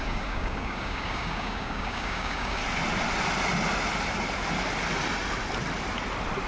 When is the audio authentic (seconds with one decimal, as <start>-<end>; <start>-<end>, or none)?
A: 2.6-6.5